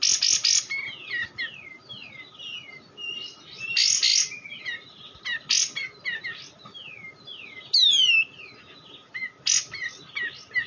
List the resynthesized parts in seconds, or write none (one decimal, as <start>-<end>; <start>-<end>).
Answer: none